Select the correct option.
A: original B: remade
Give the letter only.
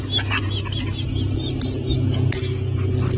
A